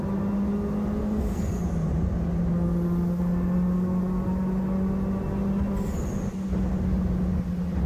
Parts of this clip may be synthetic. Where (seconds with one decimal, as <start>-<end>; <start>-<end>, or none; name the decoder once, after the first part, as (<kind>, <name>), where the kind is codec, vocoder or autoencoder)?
1.0-1.6 (codec, SNAC)